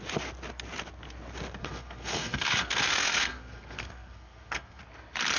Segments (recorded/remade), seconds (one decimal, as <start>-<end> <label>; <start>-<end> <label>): 0.0-1.6 recorded; 1.6-4.8 remade; 4.8-5.4 recorded